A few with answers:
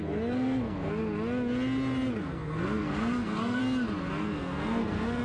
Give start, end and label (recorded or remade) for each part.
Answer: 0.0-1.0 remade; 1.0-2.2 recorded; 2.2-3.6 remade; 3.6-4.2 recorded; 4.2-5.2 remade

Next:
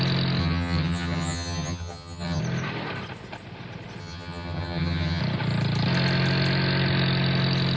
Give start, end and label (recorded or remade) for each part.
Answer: 0.0-0.4 recorded; 0.4-2.4 remade; 2.4-4.0 recorded; 4.0-5.2 remade; 5.2-7.8 recorded